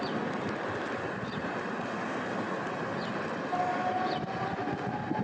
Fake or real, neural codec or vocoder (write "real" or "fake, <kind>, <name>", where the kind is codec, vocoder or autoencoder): real